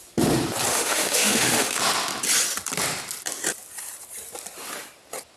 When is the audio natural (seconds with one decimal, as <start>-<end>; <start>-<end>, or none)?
0.0-0.7; 1.8-5.4